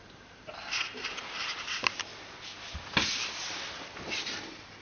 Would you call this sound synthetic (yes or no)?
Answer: no